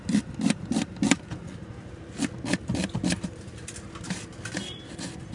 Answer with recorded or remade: recorded